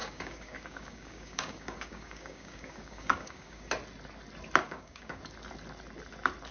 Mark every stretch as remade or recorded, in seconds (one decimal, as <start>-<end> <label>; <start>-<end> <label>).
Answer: 0.0-3.7 remade; 3.7-4.6 recorded; 4.6-5.2 remade; 5.2-6.5 recorded